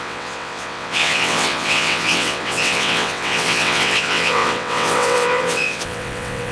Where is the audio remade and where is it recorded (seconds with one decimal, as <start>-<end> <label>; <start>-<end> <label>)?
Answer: 0.0-6.5 remade